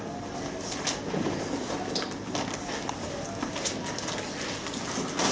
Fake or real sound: real